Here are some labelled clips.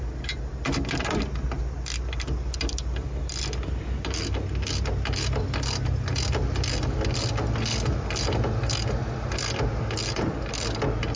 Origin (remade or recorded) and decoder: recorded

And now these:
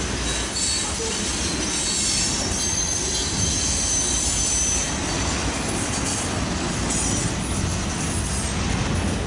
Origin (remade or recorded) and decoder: recorded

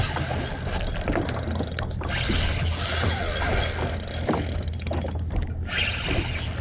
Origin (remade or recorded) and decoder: recorded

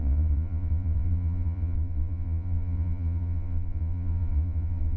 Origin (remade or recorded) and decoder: remade, vocoder, Vocos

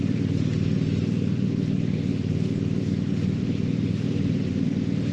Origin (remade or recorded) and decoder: recorded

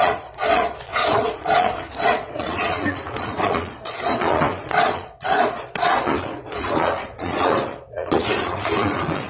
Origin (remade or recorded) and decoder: remade, vocoder, Vocos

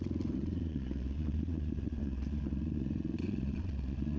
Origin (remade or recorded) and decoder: remade, vocoder, Vocos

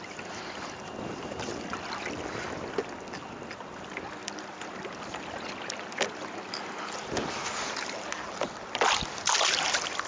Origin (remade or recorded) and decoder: recorded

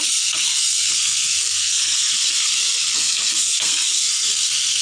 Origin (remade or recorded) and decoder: remade, codec, SNAC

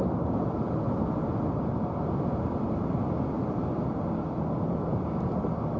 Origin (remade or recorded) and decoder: recorded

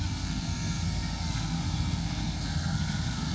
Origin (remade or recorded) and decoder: remade, codec, SNAC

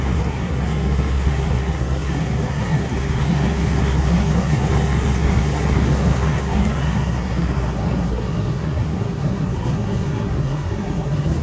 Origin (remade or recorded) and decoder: remade, codec, SNAC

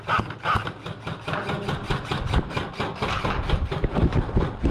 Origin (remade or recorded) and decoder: recorded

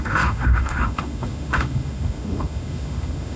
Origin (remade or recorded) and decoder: remade, autoencoder, DAC-VAE